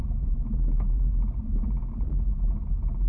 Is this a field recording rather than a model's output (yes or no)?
no